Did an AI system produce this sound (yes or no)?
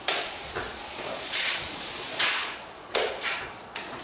yes